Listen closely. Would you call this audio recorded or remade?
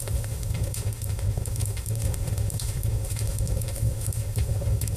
remade